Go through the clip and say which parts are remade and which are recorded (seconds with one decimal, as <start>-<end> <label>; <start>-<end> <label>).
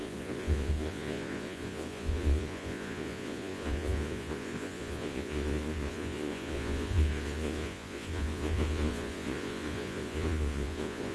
0.0-11.1 remade